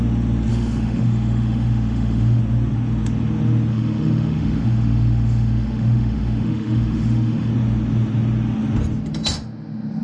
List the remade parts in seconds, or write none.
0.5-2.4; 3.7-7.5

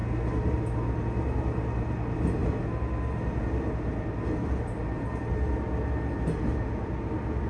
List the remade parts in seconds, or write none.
none

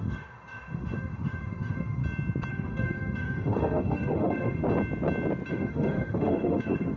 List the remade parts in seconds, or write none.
0.0-2.0; 2.5-4.6; 5.5-7.0

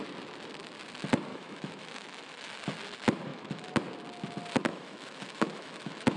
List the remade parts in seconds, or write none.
1.3-2.5; 3.3-3.8; 4.7-6.2